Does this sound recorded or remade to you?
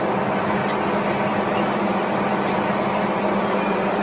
recorded